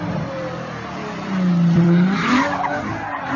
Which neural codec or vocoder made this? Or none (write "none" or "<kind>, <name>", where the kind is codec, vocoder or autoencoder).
none